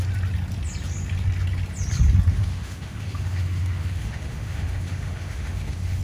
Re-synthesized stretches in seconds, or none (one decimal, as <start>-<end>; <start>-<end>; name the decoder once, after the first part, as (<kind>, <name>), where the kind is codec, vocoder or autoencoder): 2.3-6.0 (autoencoder, DAC-VAE)